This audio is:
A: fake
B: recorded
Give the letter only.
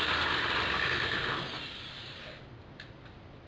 B